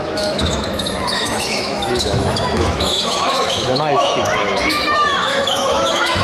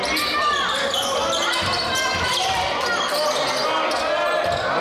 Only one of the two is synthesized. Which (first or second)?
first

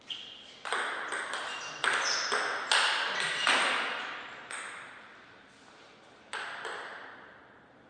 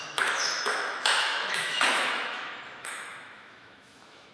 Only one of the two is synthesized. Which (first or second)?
second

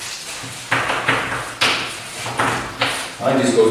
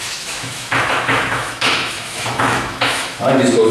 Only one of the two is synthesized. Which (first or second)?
second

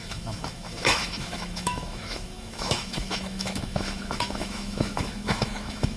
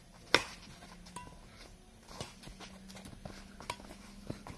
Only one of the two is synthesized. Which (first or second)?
first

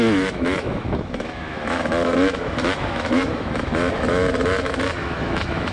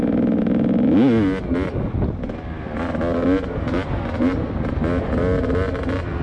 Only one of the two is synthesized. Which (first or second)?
first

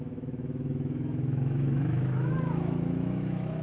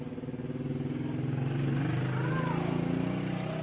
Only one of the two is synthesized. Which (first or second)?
first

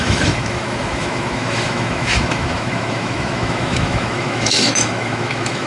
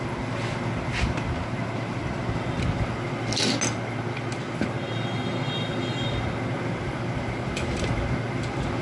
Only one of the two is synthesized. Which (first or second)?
first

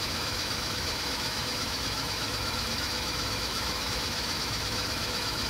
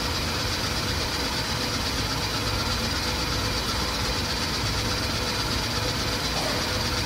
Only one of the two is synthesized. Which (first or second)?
first